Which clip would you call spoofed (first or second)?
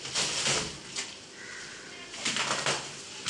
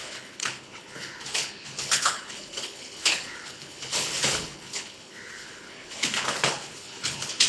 second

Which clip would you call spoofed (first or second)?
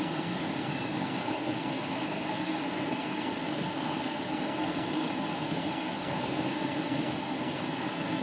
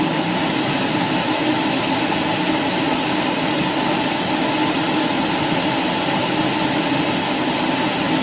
first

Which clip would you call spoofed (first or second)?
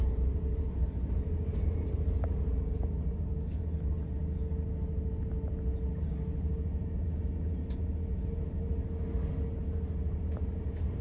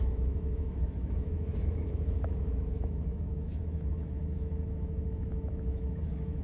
second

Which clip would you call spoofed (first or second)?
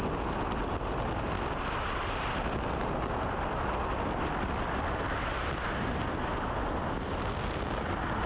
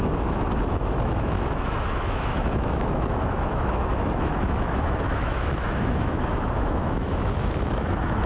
second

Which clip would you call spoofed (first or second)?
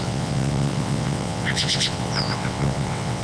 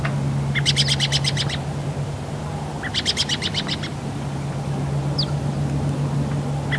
first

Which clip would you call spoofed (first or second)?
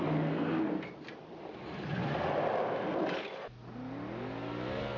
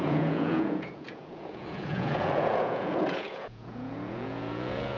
second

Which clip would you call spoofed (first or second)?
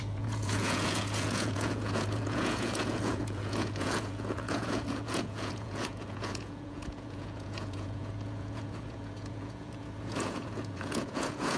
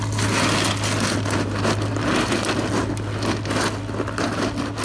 first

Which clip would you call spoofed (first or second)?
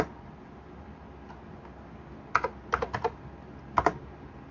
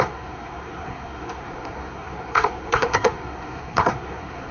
second